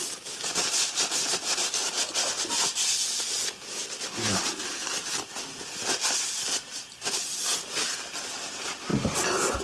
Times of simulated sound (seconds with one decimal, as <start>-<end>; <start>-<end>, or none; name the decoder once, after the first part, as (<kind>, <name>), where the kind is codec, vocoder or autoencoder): 1.2-1.7 (vocoder, BigVGAN v2); 2.2-3.2